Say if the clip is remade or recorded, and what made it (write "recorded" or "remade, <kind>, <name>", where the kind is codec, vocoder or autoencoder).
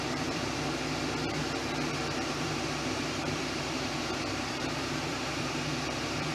remade, vocoder, BigVGAN v2